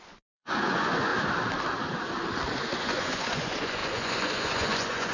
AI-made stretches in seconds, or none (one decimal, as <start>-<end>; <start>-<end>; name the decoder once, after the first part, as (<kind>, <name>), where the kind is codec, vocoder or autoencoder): 0.0-1.1 (vocoder, Vocos); 2.8-5.1